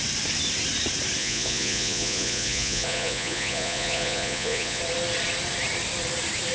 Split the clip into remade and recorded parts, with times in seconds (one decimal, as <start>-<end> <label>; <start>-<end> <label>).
0.0-1.2 recorded; 1.2-4.8 remade; 4.8-6.5 recorded